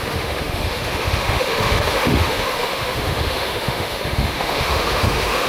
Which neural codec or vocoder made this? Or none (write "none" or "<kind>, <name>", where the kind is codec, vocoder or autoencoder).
autoencoder, DAC-VAE